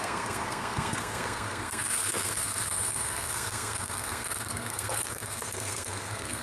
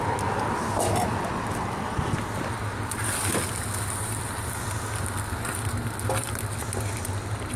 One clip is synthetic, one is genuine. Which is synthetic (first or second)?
first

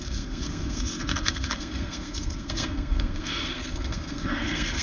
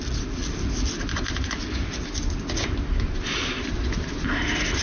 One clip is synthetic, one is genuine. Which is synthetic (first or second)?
first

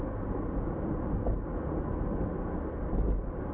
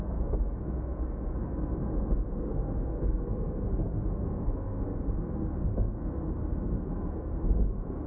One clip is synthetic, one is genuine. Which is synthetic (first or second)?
second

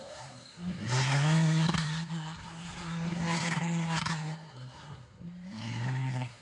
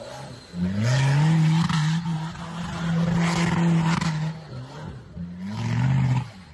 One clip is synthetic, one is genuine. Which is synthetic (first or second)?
first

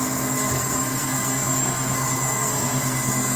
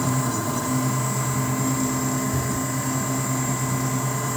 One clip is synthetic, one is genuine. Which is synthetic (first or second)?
first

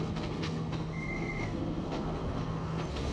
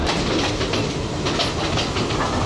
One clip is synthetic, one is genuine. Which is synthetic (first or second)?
first